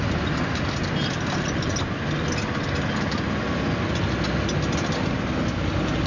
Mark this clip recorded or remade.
recorded